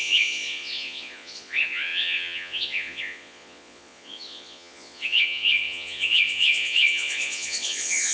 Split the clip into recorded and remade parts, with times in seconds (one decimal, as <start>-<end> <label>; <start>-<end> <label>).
0.0-8.1 remade